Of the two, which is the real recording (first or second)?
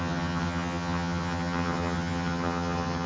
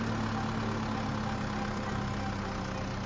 second